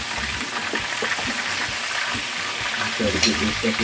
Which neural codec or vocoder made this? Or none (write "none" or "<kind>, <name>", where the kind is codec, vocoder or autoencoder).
none